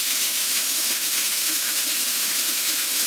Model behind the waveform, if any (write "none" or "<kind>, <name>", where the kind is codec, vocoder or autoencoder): autoencoder, DAC-VAE